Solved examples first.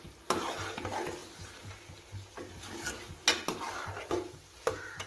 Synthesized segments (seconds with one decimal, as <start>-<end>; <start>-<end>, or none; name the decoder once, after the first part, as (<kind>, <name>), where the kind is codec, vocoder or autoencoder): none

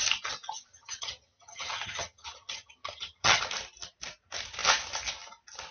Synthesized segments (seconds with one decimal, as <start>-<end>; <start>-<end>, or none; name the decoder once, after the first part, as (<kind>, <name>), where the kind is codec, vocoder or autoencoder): 0.7-3.4 (vocoder, HiFi-GAN)

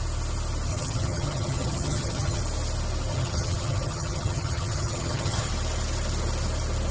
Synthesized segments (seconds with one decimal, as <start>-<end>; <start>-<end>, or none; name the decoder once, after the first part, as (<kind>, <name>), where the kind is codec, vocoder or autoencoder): 0.7-2.4 (vocoder, HiFi-GAN); 3.1-5.5

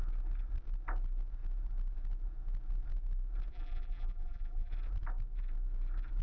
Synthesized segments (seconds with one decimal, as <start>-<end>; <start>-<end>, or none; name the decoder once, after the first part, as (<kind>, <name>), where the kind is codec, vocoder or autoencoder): 3.5-4.7 (vocoder, BigVGAN v2)

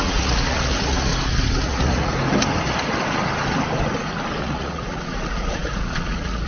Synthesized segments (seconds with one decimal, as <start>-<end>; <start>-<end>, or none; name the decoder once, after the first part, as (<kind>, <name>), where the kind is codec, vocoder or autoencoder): 0.0-1.1 (vocoder, Vocos); 1.6-2.1; 4.4-6.5